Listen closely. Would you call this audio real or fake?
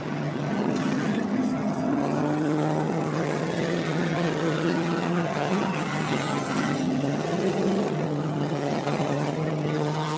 fake